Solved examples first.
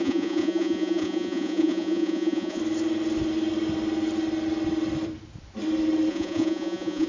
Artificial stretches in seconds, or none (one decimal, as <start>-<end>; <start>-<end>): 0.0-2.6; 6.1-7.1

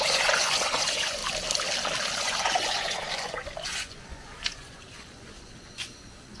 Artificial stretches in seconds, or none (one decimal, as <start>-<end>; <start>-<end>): 0.0-1.2; 2.2-6.4

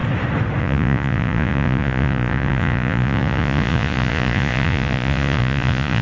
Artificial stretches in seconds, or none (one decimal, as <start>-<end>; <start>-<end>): 0.6-6.0

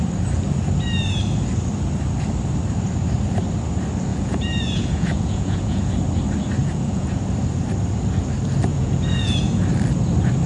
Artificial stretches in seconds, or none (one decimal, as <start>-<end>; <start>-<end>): 4.1-5.9; 6.6-7.2; 8.7-9.5